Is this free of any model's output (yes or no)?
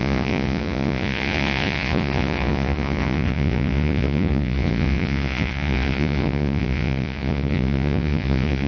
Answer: no